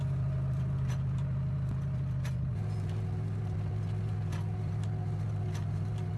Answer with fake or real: real